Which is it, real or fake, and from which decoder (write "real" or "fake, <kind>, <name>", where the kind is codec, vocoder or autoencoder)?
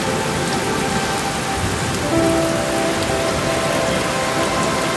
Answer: real